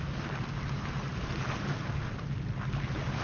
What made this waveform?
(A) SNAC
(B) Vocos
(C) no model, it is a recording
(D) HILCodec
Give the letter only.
C